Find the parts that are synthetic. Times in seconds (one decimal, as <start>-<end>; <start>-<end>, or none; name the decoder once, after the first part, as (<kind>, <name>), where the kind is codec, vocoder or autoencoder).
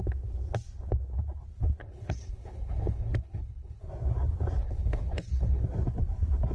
1.8-3.8 (codec, HILCodec); 4.6-5.6